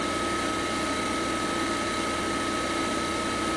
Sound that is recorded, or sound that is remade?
recorded